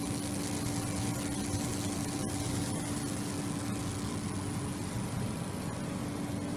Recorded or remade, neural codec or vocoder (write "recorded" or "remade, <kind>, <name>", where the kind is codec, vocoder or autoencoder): recorded